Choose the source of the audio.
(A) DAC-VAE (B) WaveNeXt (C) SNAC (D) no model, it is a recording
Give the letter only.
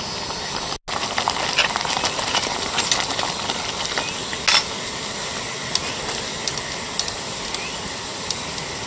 D